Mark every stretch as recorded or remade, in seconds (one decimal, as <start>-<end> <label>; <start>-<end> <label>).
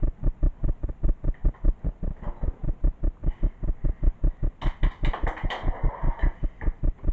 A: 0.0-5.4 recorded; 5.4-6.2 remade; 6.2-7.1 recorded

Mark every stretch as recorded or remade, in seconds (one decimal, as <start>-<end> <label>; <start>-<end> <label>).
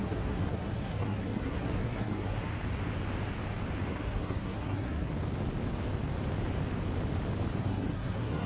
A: 0.0-2.5 remade; 2.5-3.9 recorded; 3.9-5.1 remade; 5.1-7.6 recorded; 7.6-8.5 remade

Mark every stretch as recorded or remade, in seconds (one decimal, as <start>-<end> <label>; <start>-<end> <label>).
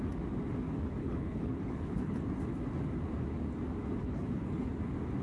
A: 0.0-1.0 recorded; 1.0-2.2 remade; 2.2-4.0 recorded; 4.0-4.8 remade; 4.8-5.2 recorded